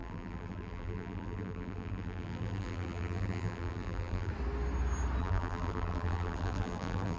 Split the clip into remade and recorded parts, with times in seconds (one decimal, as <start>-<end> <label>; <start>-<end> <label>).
0.0-4.3 remade; 4.3-5.2 recorded; 5.2-7.2 remade